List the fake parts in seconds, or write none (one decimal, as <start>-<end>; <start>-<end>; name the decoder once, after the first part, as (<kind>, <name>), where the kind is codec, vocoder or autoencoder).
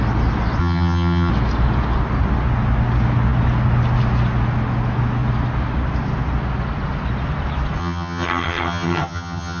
0.6-1.3 (vocoder, HiFi-GAN); 7.8-9.6